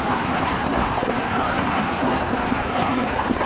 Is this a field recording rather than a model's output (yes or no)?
no